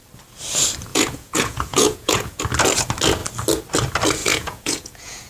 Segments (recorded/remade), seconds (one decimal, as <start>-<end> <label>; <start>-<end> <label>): 0.0-0.9 recorded; 0.9-2.4 remade; 2.4-4.2 recorded; 4.2-5.3 remade